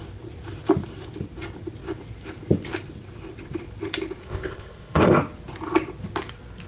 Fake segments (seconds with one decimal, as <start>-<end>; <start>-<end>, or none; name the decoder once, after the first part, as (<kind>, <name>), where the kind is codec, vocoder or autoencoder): 4.2-5.2 (codec, ZipCodec)